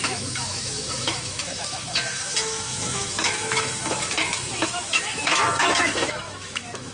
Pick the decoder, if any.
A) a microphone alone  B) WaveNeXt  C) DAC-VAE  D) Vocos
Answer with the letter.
C